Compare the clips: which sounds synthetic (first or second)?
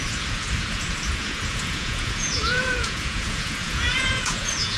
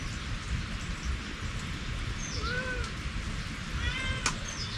first